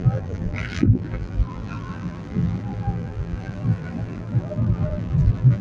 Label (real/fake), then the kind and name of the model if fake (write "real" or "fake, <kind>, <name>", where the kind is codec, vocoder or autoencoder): fake, vocoder, BigVGAN v2